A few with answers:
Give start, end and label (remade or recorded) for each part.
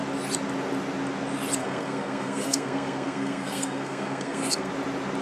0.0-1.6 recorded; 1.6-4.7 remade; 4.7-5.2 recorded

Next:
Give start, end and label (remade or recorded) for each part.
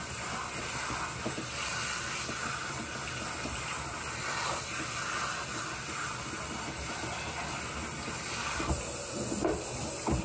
0.0-10.2 recorded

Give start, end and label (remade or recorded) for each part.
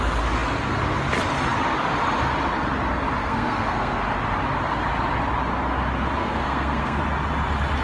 0.0-3.2 recorded; 3.2-4.0 remade; 4.0-6.2 recorded; 6.2-7.0 remade; 7.0-7.8 recorded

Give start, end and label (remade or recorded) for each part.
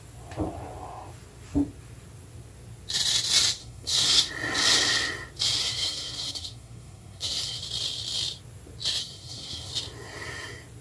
0.0-3.6 recorded; 3.6-4.3 remade; 4.3-5.6 recorded; 5.6-7.6 remade; 7.6-9.0 recorded; 9.0-9.7 remade; 9.7-10.8 recorded